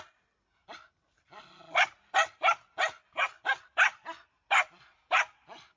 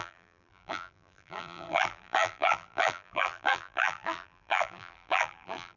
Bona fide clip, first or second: first